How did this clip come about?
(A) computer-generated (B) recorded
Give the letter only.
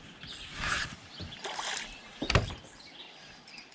B